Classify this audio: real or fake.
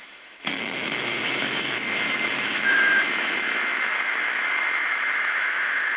fake